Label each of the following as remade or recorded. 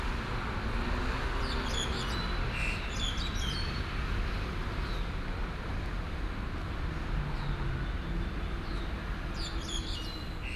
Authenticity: recorded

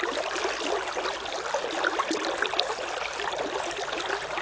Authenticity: recorded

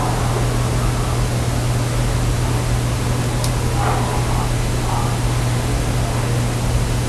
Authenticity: recorded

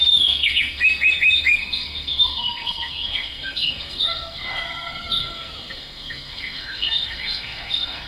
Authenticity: remade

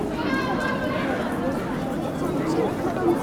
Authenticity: recorded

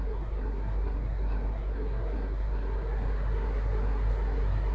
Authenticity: remade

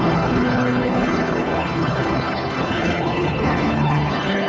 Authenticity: remade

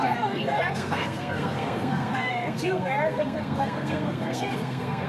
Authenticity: remade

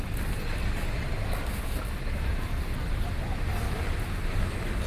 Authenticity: recorded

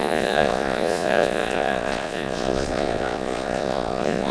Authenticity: remade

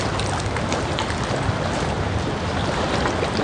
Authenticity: recorded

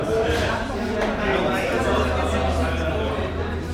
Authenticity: recorded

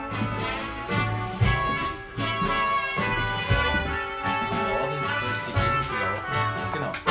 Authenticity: recorded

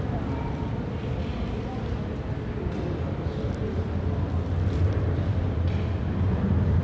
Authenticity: recorded